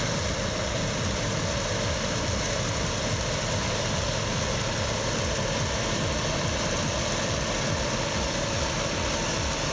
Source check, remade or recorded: recorded